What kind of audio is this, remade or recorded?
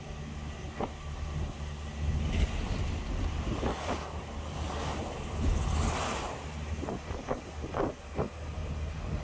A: recorded